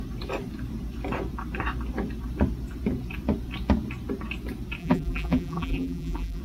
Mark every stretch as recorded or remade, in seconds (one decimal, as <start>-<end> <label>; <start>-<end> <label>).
0.0-4.8 recorded; 4.8-6.4 remade